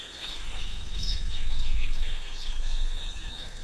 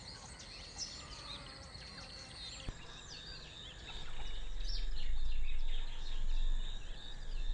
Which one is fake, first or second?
first